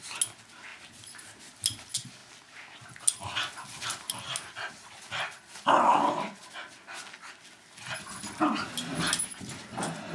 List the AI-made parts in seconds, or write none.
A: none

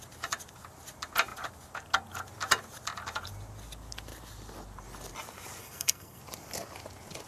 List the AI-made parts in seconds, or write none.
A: 5.6-6.2 (codec, SNAC)